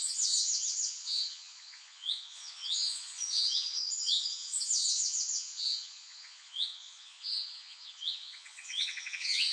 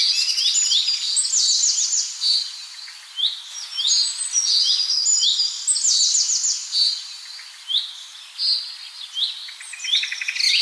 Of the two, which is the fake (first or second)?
first